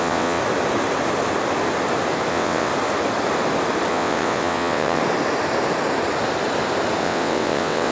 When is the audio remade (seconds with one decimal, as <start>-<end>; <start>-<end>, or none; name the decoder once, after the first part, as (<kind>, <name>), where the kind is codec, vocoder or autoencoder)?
0.0-0.4 (vocoder, WaveNeXt); 2.3-2.7; 3.9-5.0; 7.0-7.9

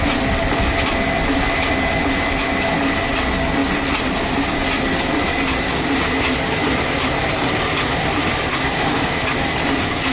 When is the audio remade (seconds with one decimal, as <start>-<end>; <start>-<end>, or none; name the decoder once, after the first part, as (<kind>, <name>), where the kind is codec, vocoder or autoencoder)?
8.5-9.2 (codec, DAC)